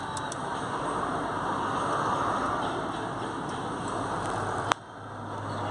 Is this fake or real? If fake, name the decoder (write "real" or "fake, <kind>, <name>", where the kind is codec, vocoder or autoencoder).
real